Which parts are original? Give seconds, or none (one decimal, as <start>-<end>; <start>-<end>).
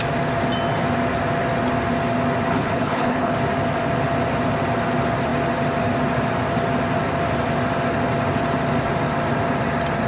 0.0-2.5; 3.3-10.1